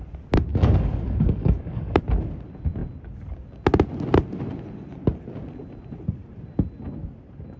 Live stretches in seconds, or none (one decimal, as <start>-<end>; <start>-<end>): 0.0-0.5; 2.0-7.6